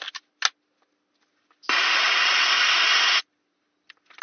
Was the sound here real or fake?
real